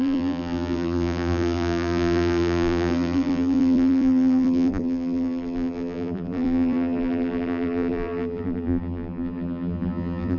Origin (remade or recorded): remade